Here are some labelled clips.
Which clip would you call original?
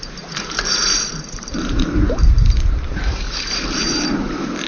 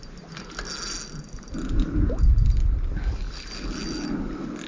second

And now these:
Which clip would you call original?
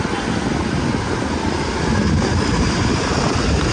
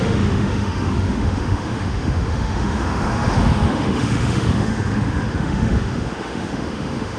first